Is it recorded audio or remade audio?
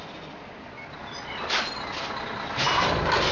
recorded